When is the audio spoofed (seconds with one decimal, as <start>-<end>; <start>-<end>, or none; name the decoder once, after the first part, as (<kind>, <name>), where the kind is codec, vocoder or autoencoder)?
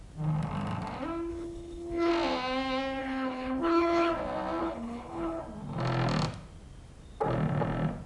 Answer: 1.3-2.1 (codec, HILCodec); 3.0-4.1; 4.6-5.4